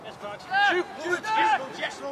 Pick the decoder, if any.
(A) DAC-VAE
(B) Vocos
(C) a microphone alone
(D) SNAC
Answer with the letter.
C